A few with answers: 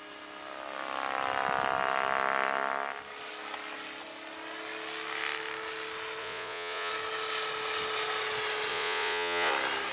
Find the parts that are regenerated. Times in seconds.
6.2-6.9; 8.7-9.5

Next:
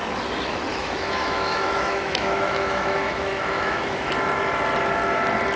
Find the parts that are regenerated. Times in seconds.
0.7-4.1

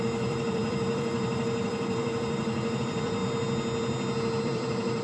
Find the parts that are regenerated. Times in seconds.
0.0-3.2; 4.4-5.0

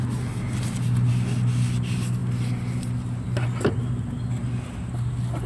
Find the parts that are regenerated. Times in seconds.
none

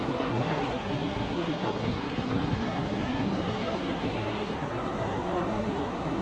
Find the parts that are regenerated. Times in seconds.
0.0-6.2